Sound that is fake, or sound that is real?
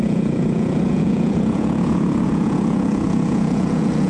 fake